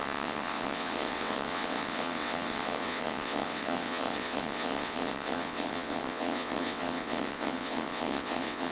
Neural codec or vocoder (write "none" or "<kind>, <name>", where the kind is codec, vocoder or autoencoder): vocoder, WaveNeXt